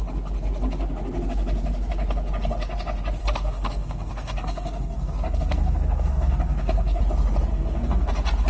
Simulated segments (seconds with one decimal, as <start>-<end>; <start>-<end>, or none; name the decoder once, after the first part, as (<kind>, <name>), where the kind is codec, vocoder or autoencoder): 3.2-7.0 (codec, SNAC); 7.5-8.1